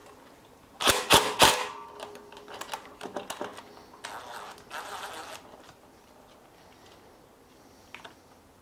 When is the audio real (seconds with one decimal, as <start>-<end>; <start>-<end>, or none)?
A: 0.0-8.6